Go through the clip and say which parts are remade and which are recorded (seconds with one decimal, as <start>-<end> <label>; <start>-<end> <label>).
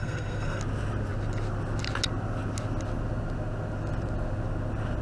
0.0-0.6 remade; 0.6-5.0 recorded